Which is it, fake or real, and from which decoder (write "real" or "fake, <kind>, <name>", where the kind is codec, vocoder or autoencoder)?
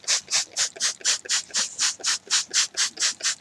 real